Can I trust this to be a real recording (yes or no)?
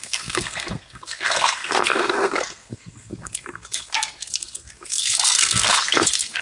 no